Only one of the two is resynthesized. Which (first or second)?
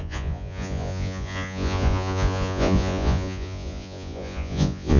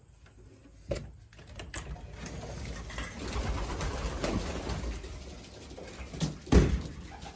first